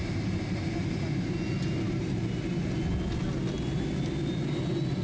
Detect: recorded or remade recorded